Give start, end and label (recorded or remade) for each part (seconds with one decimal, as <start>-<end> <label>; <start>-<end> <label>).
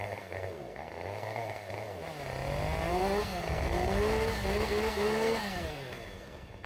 0.0-2.0 remade; 2.0-2.9 recorded; 2.9-6.7 remade